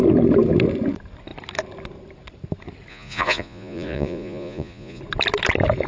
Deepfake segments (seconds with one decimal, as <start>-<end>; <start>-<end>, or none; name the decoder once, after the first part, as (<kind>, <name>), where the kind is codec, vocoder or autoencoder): 2.9-5.0 (vocoder, Vocos)